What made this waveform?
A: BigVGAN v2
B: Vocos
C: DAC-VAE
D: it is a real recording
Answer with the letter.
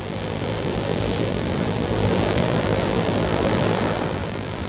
A